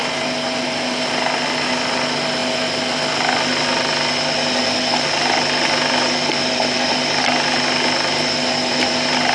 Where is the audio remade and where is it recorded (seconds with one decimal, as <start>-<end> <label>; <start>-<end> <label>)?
0.0-9.3 recorded